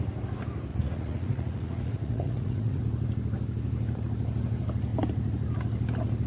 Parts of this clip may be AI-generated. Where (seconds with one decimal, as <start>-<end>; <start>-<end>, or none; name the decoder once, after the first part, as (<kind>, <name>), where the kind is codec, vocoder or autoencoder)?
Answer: 0.7-2.8 (vocoder, Vocos)